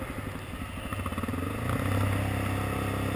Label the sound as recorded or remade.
recorded